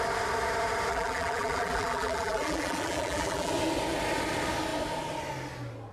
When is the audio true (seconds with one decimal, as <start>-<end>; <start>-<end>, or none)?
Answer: 0.0-0.9; 3.5-5.9

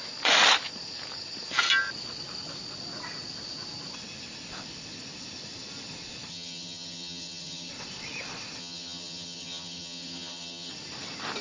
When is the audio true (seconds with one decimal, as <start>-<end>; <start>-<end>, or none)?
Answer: 0.0-6.3; 7.7-8.6; 10.7-11.4

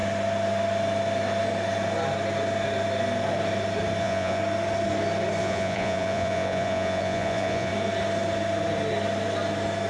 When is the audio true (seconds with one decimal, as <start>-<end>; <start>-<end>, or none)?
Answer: 0.0-4.0; 4.4-5.4; 7.7-9.9

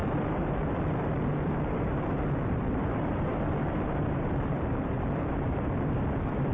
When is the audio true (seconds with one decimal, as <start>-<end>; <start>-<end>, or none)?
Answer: none

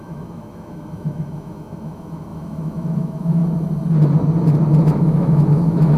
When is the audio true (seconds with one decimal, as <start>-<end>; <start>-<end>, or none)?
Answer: 3.4-4.8

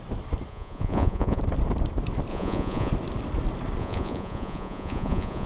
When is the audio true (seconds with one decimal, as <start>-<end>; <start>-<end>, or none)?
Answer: 0.0-0.5; 1.4-2.3; 2.9-3.8

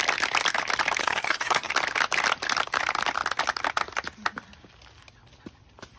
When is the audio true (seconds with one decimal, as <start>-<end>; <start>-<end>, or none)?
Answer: 0.0-1.0; 1.7-6.0

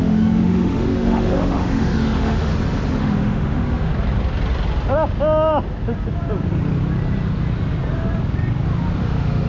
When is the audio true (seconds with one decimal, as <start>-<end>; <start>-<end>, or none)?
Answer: 2.5-3.0; 3.9-9.0